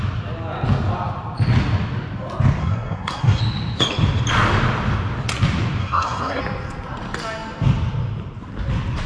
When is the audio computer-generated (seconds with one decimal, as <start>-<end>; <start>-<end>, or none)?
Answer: 2.6-3.4; 5.8-6.4